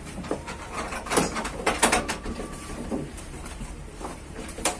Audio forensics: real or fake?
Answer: fake